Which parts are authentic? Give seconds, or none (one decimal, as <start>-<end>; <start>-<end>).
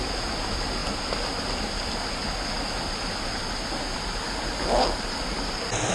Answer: 0.0-5.9